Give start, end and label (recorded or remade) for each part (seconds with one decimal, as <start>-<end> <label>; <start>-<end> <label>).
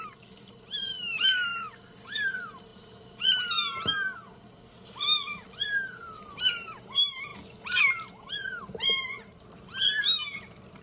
0.0-1.5 remade; 1.5-2.0 recorded; 2.0-10.8 remade